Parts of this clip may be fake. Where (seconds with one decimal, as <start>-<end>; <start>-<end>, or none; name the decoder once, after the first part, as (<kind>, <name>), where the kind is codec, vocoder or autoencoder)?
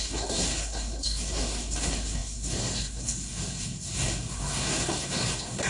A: 0.0-5.7 (codec, SNAC)